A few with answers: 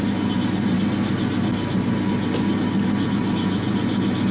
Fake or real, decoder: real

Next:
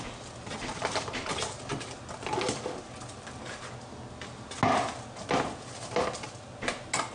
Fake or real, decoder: real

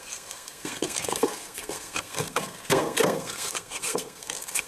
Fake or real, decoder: fake, codec, SNAC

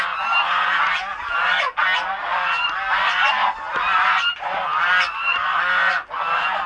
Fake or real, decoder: real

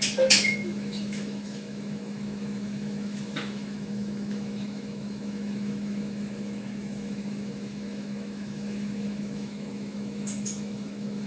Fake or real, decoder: fake, autoencoder, DAC-VAE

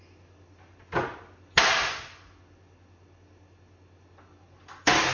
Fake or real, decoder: real